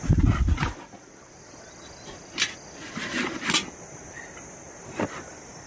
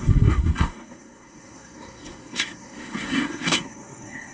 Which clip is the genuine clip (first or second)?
first